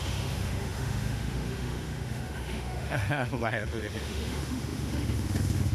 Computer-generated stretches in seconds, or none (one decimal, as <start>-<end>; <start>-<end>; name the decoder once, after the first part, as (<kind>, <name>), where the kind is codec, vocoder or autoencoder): 0.0-5.7 (autoencoder, DAC-VAE)